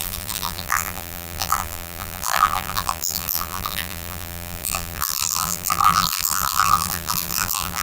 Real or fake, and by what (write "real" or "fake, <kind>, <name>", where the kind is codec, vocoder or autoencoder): fake, vocoder, BigVGAN v2